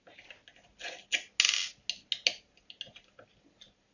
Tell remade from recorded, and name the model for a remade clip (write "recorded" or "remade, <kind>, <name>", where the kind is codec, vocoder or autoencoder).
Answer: recorded